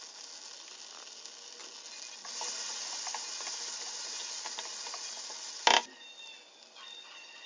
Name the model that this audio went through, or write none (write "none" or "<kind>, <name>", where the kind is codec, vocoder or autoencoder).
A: none